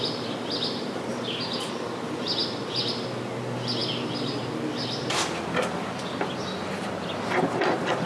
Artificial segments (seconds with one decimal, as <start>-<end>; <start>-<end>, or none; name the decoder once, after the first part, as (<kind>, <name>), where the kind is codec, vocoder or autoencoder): none